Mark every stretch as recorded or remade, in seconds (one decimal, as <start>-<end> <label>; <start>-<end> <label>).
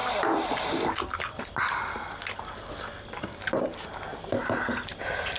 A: 0.0-5.4 recorded